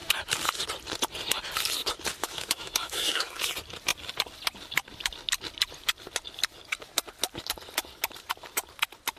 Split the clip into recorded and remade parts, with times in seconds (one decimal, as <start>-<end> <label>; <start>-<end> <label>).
0.0-2.2 recorded; 2.2-3.5 remade; 3.5-9.2 recorded